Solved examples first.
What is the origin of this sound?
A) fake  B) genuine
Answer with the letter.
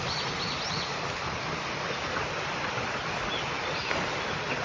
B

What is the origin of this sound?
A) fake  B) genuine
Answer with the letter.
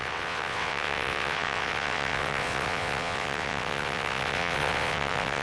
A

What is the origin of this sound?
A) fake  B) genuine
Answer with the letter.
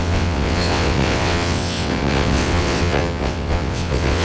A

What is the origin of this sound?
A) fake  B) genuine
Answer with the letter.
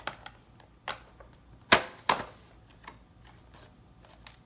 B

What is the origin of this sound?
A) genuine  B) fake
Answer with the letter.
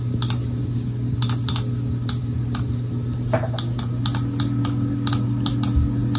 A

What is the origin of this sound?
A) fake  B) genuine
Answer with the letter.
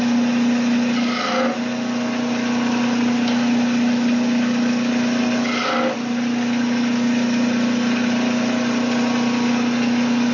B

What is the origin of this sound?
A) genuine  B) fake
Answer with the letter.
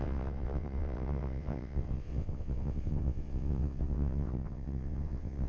B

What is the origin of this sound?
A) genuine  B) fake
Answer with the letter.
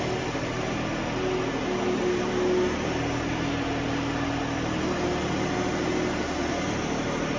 A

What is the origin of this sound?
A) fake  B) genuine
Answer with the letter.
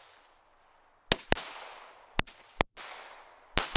B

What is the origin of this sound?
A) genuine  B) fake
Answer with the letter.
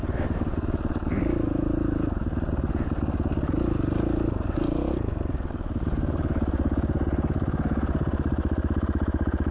A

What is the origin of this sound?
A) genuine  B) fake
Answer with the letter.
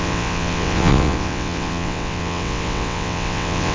B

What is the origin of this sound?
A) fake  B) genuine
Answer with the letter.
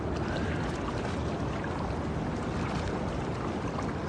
B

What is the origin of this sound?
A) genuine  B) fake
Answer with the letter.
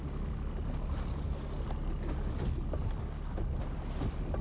A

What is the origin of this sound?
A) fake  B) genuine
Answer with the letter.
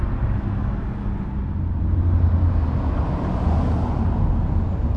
B